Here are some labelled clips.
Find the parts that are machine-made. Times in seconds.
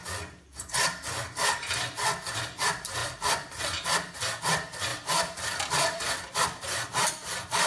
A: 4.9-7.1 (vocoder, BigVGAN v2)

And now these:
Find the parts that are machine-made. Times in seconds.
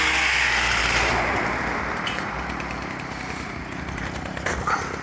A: 0.8-3.8 (vocoder, BigVGAN v2)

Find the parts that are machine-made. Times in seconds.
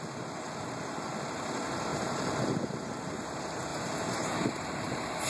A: 1.9-2.4 (vocoder, BigVGAN v2); 3.7-5.3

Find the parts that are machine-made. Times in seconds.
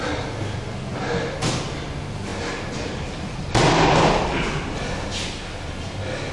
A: 2.3-3.5 (vocoder, BigVGAN v2)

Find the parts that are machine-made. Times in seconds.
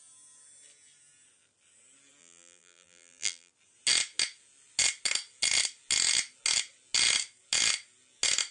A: 2.2-3.5 (vocoder, BigVGAN v2)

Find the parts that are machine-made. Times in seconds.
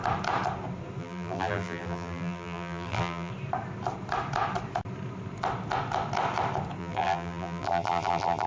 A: 1.0-3.3 (vocoder, BigVGAN v2); 6.8-8.5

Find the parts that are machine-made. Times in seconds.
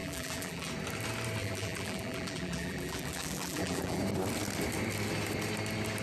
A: 0.0-0.7 (vocoder, BigVGAN v2); 1.4-4.0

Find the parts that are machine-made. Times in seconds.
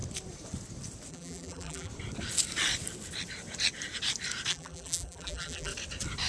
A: 1.1-1.9 (vocoder, BigVGAN v2); 4.5-5.7